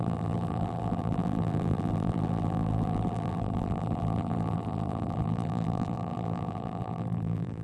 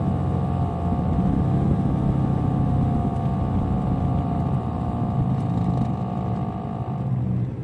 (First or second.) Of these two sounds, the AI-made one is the first